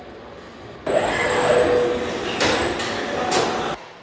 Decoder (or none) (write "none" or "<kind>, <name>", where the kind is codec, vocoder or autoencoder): none